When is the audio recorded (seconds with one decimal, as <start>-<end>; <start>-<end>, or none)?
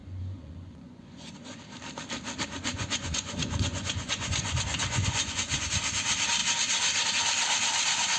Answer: 1.6-2.7; 5.7-8.2